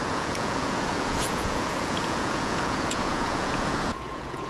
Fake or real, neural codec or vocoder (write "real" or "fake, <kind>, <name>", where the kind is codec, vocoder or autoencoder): fake, vocoder, Vocos